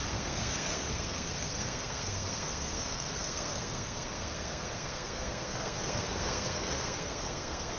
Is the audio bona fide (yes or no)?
no